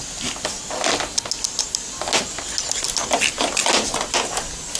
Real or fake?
real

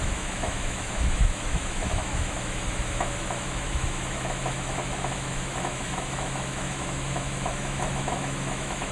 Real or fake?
fake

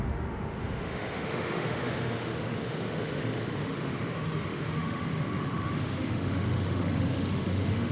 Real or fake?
fake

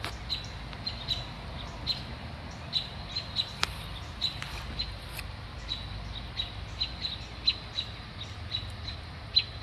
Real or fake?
real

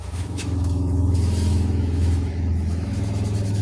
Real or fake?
fake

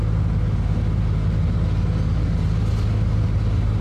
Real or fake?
real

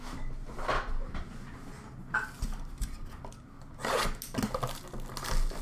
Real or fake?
real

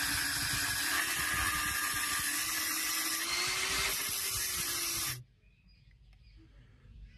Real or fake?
real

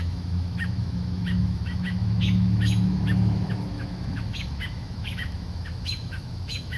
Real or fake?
fake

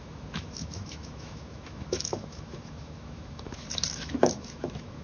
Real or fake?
fake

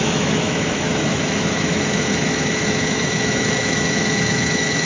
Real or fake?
fake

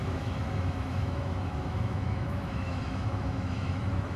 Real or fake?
fake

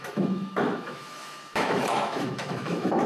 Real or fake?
fake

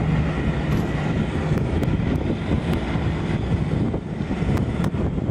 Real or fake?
real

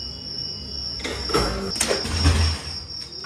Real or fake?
real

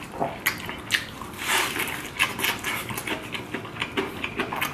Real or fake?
real